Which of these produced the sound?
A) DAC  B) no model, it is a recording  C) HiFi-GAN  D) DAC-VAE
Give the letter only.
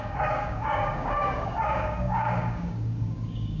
A